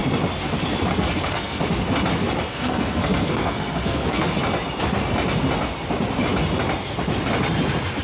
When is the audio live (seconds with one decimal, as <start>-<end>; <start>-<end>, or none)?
0.0-0.9; 1.6-2.5; 4.3-8.0